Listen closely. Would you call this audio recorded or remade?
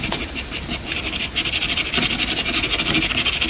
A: recorded